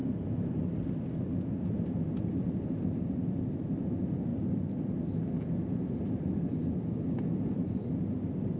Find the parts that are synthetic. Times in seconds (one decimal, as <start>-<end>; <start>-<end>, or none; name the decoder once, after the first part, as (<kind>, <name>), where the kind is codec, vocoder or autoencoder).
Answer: none